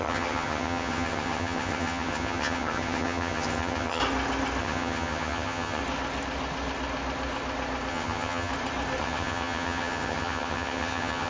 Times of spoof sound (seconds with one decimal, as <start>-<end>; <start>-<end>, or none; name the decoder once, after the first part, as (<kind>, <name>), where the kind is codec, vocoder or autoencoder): 0.0-4.0 (vocoder, HiFi-GAN); 4.6-5.8; 7.9-8.5; 9.0-11.3